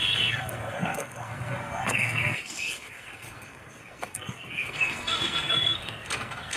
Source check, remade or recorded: remade